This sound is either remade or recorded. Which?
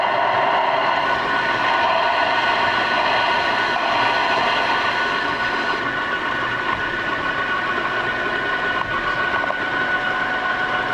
recorded